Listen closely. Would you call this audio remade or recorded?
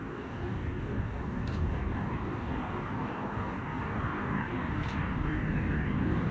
remade